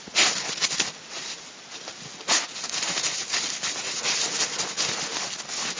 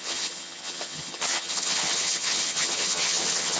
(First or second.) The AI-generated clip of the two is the second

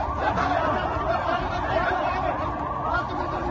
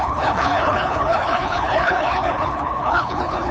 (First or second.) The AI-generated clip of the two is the second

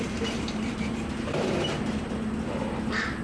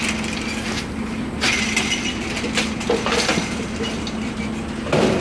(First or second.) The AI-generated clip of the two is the first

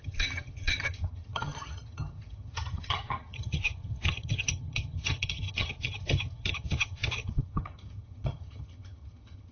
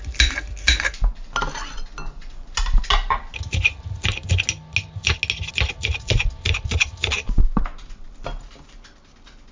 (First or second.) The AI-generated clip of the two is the first